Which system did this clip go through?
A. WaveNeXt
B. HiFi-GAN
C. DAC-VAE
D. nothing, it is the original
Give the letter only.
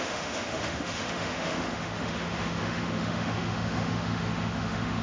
C